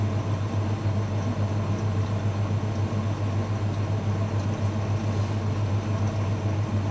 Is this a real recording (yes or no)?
yes